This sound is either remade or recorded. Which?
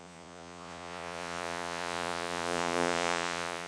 remade